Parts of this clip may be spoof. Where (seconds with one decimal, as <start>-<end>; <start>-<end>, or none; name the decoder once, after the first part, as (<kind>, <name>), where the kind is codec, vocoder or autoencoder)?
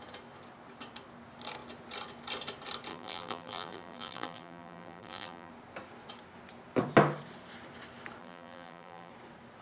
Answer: 2.9-5.5 (vocoder, BigVGAN v2); 8.2-9.1